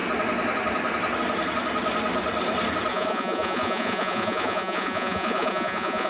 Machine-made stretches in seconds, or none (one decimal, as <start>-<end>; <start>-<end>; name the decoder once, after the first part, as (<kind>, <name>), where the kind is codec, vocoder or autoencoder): 2.9-6.1 (vocoder, Vocos)

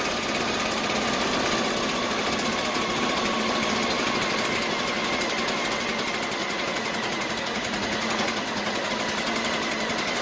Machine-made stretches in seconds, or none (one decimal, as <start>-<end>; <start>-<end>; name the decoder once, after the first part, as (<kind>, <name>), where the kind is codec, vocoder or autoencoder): 6.4-8.9 (vocoder, Vocos)

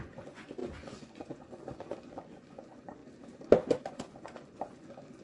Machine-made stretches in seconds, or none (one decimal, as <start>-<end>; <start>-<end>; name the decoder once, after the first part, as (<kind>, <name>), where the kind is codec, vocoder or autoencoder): 0.0-3.0 (vocoder, Vocos); 3.8-5.2

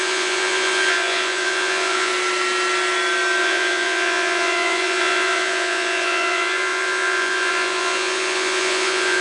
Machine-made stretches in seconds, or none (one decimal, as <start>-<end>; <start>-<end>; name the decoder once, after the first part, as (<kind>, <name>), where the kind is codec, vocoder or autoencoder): 0.0-2.1 (vocoder, Vocos); 3.4-9.2